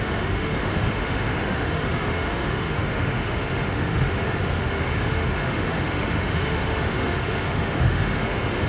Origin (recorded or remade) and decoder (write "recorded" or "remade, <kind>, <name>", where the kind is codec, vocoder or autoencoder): remade, autoencoder, DAC-VAE